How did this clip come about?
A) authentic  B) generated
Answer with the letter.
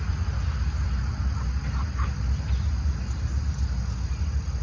A